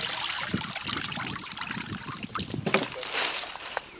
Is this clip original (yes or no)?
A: yes